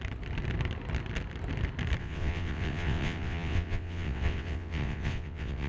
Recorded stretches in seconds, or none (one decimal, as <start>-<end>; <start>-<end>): 0.0-2.0